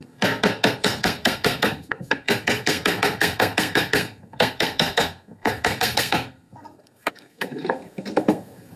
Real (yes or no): no